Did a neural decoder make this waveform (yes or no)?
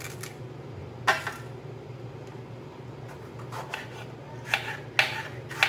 no